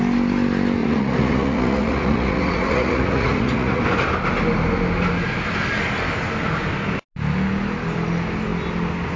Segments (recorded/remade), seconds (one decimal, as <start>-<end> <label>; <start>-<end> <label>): 0.0-0.8 recorded; 0.8-3.8 remade; 3.8-9.2 recorded